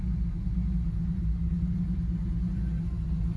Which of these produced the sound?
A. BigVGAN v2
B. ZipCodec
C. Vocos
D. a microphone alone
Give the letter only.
D